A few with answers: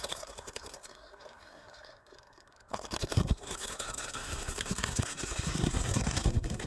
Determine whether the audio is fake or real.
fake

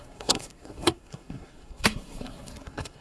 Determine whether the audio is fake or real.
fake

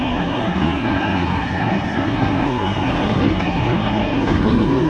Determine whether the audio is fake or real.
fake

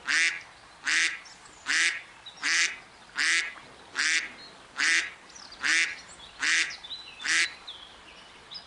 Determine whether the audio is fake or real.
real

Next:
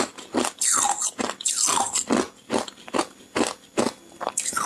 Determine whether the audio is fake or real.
real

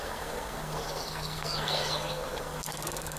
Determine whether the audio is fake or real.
fake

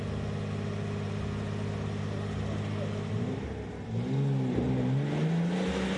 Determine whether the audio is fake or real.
real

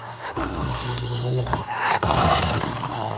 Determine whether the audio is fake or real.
fake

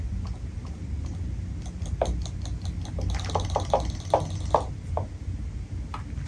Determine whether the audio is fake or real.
real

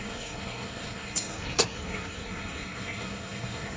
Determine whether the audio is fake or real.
fake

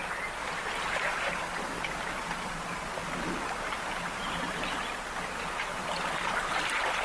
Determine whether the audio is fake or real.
real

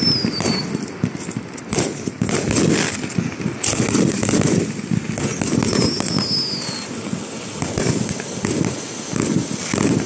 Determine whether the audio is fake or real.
real